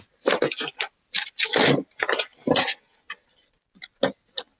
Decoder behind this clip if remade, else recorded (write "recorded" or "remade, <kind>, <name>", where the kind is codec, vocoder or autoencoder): recorded